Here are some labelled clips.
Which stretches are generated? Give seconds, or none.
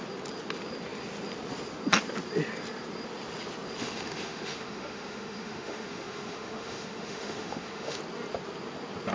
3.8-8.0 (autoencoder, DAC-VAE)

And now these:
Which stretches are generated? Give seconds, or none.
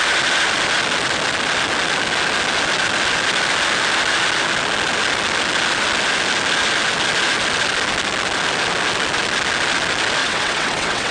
10.2-11.1 (vocoder, WaveNeXt)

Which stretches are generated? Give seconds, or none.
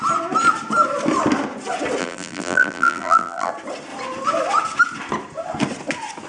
2.0-3.5 (vocoder, BigVGAN v2)